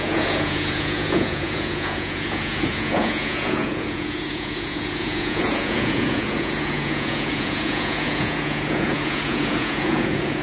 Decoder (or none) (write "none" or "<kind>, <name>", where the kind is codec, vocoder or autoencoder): vocoder, Vocos